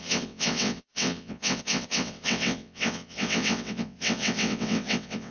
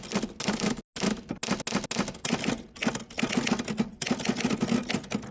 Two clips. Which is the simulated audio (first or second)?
first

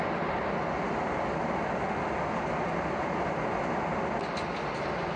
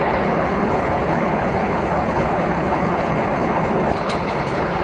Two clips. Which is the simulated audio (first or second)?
second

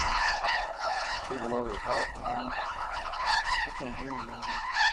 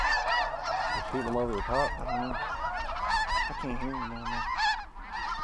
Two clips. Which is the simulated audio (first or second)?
first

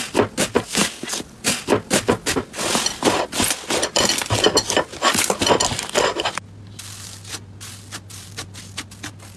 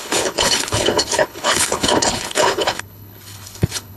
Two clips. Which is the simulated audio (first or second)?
second